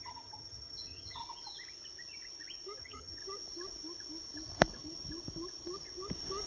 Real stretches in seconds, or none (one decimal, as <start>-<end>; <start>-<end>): 1.2-2.8; 3.2-6.5

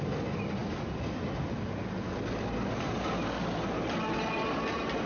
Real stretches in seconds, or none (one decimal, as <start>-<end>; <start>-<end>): 0.0-5.1

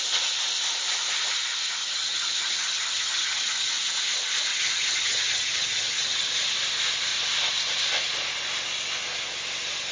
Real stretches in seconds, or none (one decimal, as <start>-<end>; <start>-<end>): 0.0-1.8; 3.7-4.5; 6.3-9.9